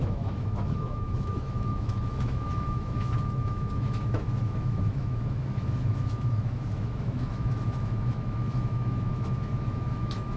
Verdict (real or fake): fake